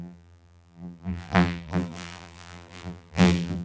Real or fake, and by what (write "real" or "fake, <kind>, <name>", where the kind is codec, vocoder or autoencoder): fake, vocoder, BigVGAN v2